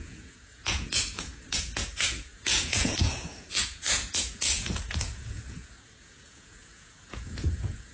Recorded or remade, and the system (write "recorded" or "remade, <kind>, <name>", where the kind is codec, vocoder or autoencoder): remade, vocoder, Vocos